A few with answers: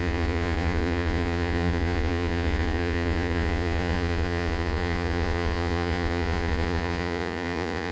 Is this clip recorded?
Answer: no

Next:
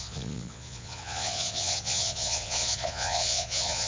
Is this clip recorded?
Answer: no